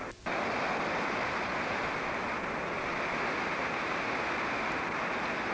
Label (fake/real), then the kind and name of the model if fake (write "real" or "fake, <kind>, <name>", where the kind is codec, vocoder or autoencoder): real